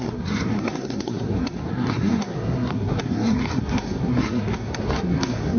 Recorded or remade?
remade